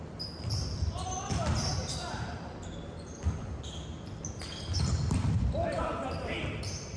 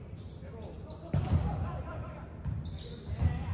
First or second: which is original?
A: second